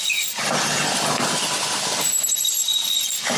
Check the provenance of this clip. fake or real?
real